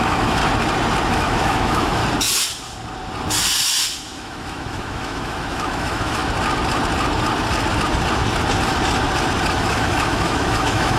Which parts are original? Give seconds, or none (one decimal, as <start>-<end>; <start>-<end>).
0.4-1.1; 2.0-4.0; 6.2-9.6